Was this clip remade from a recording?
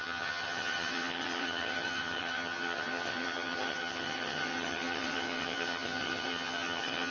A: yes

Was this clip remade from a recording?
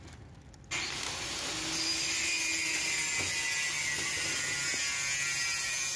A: no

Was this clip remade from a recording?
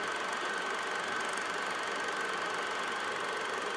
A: no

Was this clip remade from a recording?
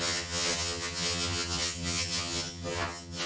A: yes